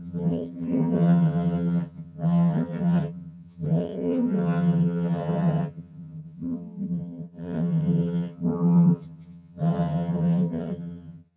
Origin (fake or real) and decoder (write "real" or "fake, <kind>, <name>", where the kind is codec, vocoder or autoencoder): fake, vocoder, HiFi-GAN